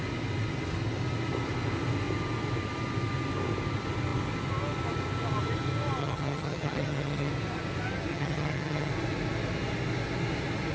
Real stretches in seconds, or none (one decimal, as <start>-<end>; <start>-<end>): 0.0-6.0; 7.3-8.1; 8.9-10.7